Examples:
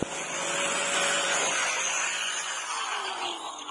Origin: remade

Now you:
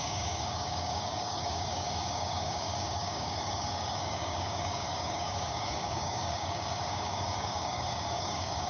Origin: remade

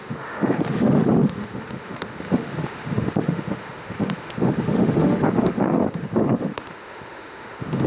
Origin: remade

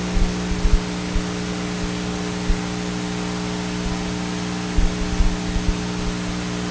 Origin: recorded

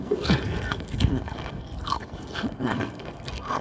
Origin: remade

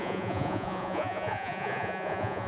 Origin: remade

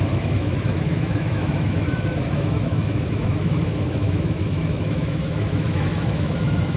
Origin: remade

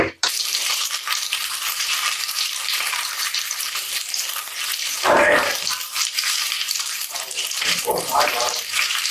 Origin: remade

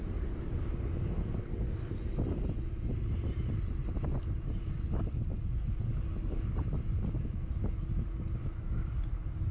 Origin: recorded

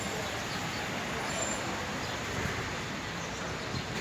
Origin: remade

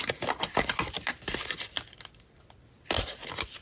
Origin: recorded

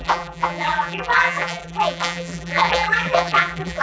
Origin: remade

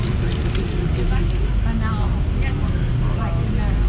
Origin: recorded